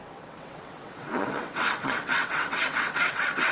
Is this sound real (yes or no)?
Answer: no